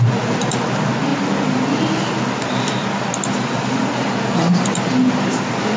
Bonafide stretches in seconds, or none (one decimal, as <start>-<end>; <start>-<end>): 0.0-5.8